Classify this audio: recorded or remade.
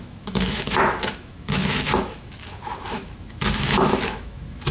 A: remade